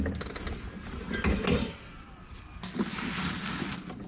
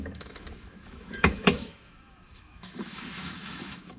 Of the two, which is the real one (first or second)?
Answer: first